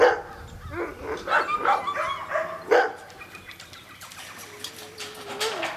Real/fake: real